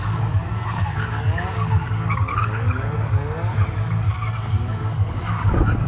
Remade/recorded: remade